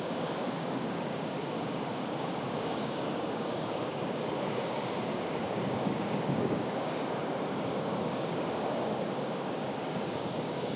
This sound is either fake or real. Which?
fake